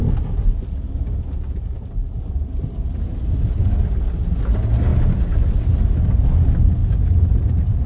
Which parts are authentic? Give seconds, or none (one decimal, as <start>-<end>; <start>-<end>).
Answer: 0.0-2.0; 2.9-7.9